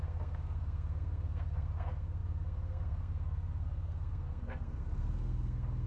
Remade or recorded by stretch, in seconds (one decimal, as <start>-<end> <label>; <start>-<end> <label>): 0.0-5.9 remade